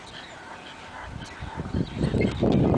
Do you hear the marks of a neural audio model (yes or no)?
no